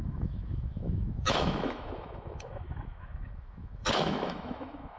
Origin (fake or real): fake